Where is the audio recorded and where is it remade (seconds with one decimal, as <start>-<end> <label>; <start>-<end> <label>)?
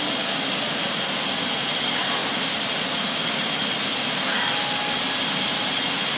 0.0-6.2 recorded